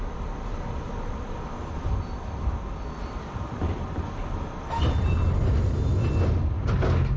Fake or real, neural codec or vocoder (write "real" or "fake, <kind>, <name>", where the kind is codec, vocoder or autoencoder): real